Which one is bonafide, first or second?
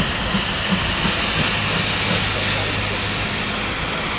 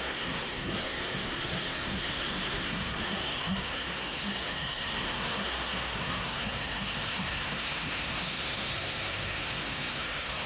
first